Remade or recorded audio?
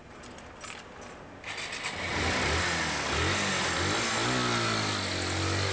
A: recorded